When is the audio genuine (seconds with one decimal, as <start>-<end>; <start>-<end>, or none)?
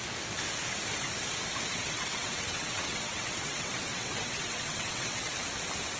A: 0.0-1.7; 5.3-6.0